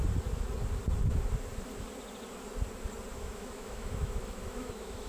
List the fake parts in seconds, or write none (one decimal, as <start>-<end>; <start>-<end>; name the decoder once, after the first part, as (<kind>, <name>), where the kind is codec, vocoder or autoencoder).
3.1-5.1 (autoencoder, DAC-VAE)